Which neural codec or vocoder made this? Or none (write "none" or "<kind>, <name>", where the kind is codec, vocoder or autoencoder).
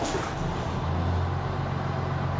none